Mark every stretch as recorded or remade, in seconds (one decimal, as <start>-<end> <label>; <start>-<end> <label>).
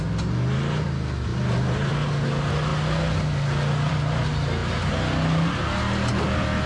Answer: 0.0-6.7 recorded